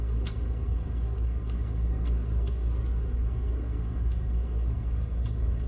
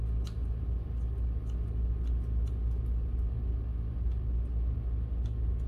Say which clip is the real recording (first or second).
second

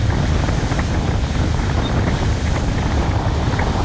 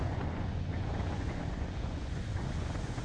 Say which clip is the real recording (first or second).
first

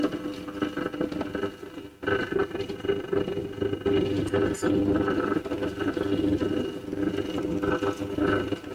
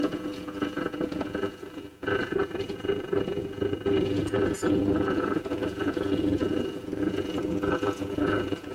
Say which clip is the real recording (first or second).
first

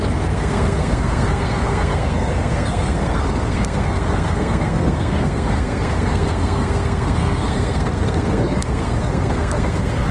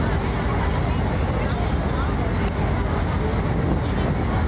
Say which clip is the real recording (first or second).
second